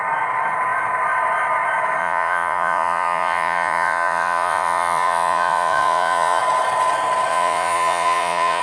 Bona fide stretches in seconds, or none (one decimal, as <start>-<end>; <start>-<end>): 0.0-2.0; 6.4-7.3